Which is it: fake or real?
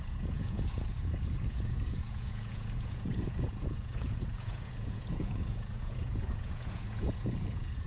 fake